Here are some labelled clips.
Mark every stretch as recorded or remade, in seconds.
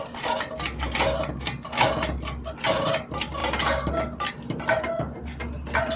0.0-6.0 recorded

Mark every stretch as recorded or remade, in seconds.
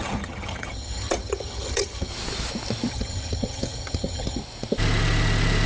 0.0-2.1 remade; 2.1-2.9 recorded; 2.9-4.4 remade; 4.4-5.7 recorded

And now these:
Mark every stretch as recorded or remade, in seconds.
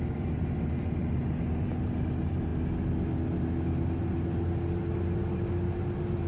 0.0-6.3 recorded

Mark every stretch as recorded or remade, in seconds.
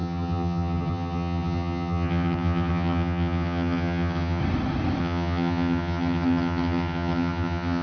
0.0-4.4 remade; 4.4-5.0 recorded; 5.0-7.8 remade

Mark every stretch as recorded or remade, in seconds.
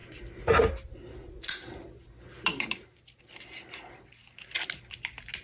0.0-5.4 recorded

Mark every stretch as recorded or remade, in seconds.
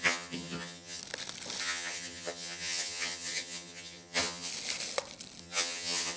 0.0-1.0 remade; 1.0-1.6 recorded; 1.6-4.5 remade; 4.5-5.4 recorded; 5.4-6.2 remade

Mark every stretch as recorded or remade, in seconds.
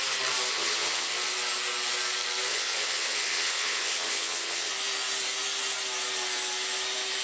0.0-0.5 recorded; 0.5-1.1 remade; 1.1-2.5 recorded; 2.5-4.7 remade; 4.7-7.2 recorded